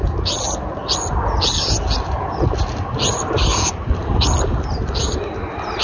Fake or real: real